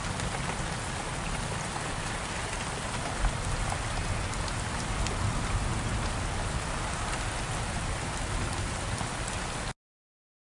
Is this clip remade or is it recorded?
recorded